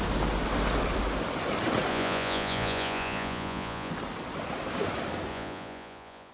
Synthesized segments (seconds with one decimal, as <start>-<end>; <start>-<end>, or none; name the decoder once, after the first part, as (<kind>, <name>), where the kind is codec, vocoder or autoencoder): 1.9-3.9 (vocoder, Vocos); 5.3-6.3